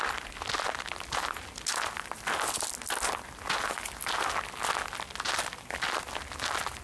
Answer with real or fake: real